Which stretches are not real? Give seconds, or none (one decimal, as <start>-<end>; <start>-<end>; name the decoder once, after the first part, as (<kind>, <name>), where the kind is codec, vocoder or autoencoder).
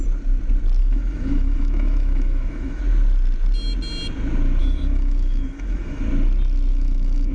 0.8-2.8 (autoencoder, DAC-VAE); 4.6-6.0; 6.7-7.3